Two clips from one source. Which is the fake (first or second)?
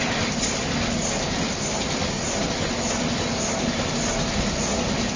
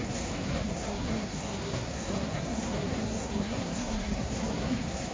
second